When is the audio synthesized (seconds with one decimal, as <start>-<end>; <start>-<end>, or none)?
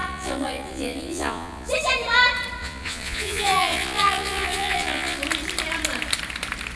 0.0-1.7; 2.6-5.2